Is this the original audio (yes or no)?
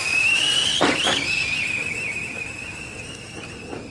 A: yes